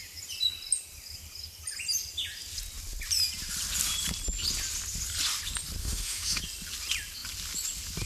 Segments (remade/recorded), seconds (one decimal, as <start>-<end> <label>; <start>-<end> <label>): 0.0-5.8 recorded; 5.8-6.4 remade; 6.4-8.1 recorded